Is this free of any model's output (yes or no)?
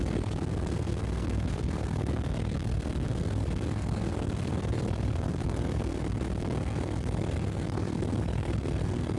no